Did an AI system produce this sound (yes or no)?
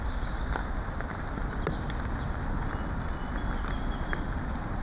no